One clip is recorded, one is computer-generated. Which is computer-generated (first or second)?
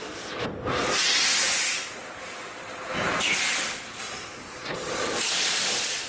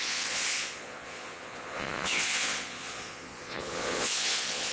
second